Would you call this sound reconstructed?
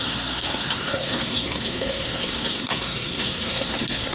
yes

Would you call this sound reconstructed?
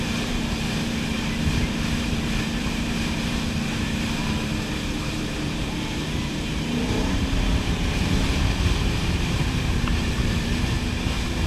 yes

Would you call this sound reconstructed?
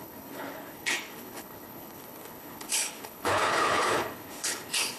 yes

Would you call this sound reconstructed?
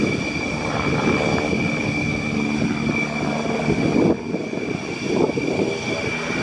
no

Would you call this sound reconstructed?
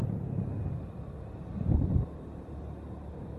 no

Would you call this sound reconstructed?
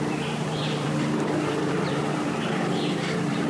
yes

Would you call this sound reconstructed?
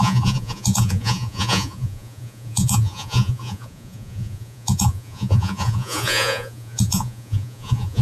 yes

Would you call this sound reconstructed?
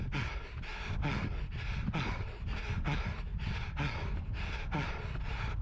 no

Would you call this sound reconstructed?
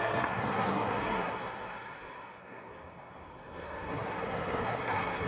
yes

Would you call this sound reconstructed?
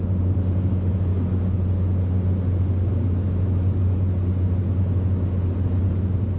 no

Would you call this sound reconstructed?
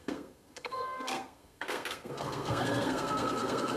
yes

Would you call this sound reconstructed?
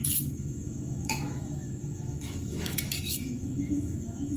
yes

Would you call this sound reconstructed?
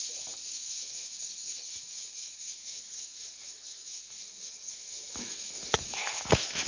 yes